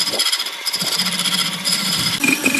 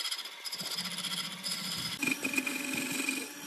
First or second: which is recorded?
second